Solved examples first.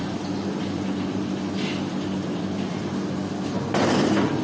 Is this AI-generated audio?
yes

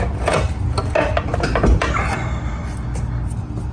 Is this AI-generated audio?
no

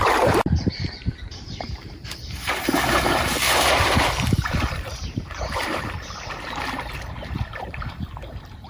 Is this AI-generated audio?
yes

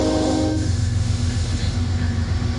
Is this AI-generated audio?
yes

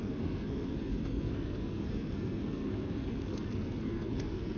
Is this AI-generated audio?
yes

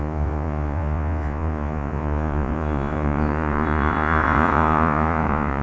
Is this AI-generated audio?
yes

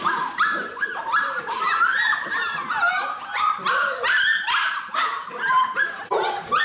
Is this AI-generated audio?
yes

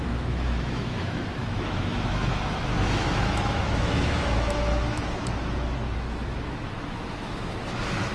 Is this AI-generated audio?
yes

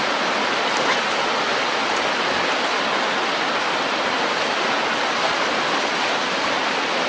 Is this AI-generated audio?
no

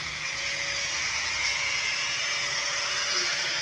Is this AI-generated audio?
yes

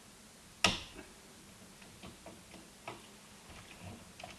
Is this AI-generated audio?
no